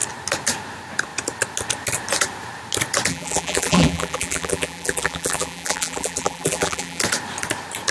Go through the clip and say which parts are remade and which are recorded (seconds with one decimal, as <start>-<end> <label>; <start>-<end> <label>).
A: 0.0-3.1 recorded; 3.1-7.0 remade; 7.0-7.9 recorded